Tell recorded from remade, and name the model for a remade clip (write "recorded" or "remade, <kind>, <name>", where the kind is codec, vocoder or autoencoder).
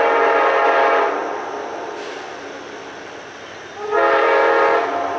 recorded